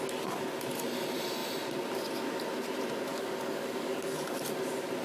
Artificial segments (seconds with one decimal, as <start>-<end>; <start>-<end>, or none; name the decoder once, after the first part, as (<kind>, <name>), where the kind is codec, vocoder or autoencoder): 3.1-4.4 (codec, DAC)